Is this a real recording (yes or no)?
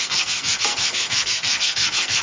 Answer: no